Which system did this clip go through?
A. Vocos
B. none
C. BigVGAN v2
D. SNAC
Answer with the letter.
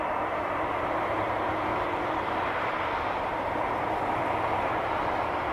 C